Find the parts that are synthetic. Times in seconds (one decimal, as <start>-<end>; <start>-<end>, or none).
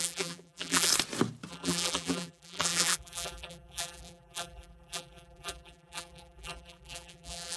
0.0-0.9; 1.5-7.6